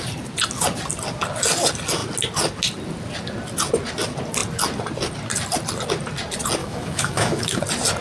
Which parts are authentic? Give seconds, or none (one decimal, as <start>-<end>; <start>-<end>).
0.0-6.6; 7.6-8.0